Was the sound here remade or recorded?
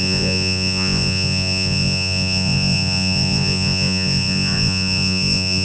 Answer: remade